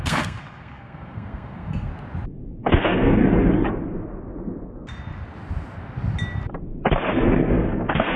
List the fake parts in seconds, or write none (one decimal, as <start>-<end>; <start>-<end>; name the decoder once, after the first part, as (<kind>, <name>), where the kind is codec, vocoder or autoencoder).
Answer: 0.0-1.9 (codec, SNAC); 2.6-3.2; 7.5-8.2